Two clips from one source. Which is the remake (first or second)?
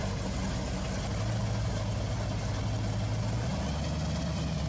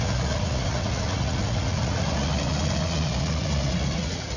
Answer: second